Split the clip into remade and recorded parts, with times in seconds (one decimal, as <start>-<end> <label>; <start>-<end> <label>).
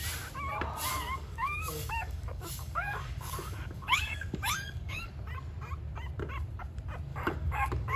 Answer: 0.0-0.9 recorded; 0.9-5.1 remade; 5.1-7.1 recorded; 7.1-8.0 remade